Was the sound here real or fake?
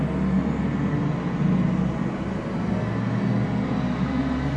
real